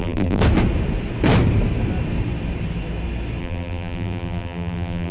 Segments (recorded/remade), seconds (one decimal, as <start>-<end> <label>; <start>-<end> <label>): 0.0-0.4 remade; 0.4-3.4 recorded; 3.4-5.1 remade